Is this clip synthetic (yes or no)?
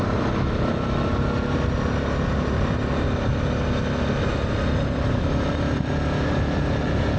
no